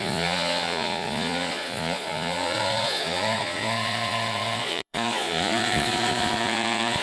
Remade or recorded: remade